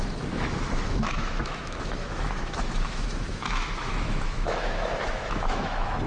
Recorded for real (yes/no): no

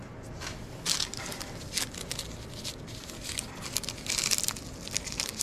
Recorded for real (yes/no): yes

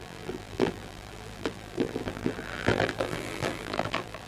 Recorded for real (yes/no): no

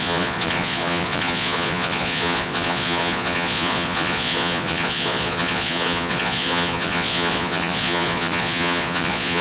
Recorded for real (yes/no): no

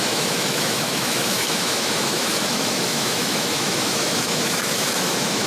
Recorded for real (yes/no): no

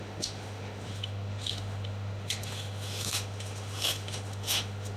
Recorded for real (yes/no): no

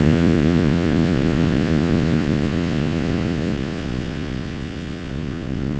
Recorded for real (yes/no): no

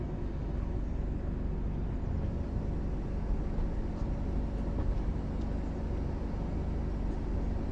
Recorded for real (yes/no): yes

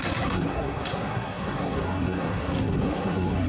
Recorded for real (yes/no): no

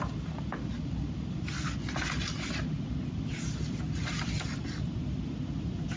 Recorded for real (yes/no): yes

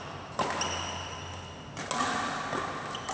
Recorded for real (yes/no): yes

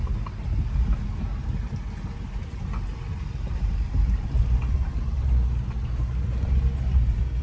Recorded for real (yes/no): yes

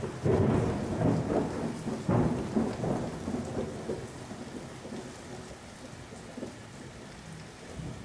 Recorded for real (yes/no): yes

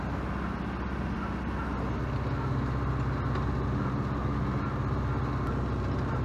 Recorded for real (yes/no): yes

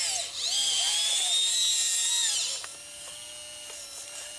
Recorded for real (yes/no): yes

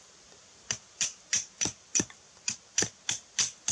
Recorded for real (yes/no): no